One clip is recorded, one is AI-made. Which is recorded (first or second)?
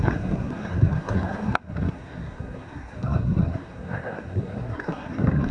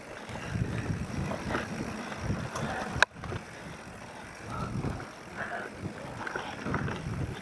second